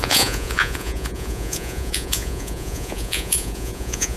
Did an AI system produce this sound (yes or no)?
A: yes